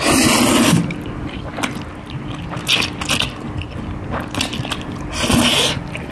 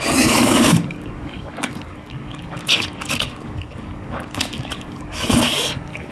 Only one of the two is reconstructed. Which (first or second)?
second